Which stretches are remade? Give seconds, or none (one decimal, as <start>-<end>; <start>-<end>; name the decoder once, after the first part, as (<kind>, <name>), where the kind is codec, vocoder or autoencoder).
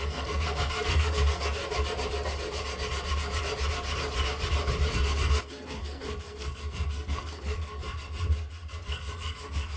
0.0-1.6 (codec, SNAC); 4.9-7.8; 8.9-9.8